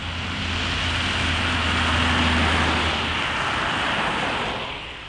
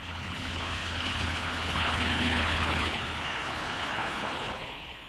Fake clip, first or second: second